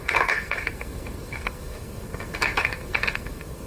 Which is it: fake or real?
fake